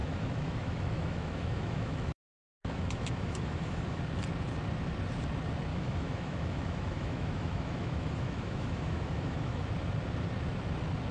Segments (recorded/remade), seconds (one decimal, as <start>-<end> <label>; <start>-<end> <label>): 0.0-4.0 remade; 4.0-5.7 recorded; 5.7-9.7 remade; 9.7-11.1 recorded